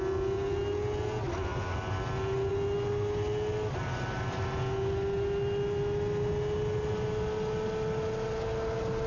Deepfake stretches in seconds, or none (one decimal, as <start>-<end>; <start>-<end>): none